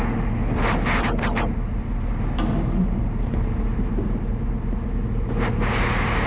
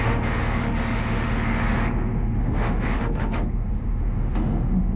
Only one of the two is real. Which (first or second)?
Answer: first